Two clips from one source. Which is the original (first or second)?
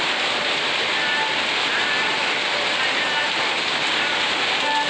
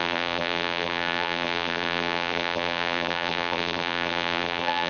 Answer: first